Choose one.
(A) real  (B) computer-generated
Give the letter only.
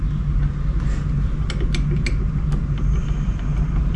A